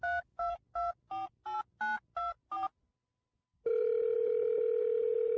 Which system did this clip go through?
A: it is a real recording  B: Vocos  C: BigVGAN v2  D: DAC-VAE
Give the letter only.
A